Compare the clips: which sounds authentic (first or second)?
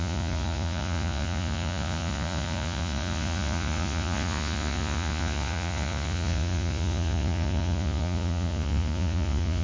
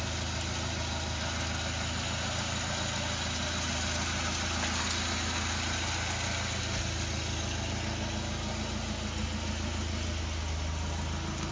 second